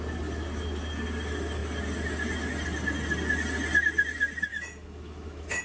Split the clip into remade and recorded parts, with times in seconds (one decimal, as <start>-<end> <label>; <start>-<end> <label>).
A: 0.0-4.5 recorded; 4.5-5.6 remade